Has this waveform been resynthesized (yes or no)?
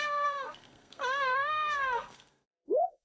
yes